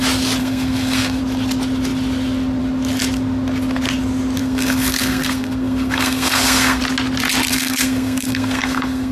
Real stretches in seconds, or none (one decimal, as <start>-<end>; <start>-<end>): 0.0-0.4; 1.2-4.4; 6.8-7.5